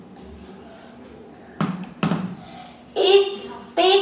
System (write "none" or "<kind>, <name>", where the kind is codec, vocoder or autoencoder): none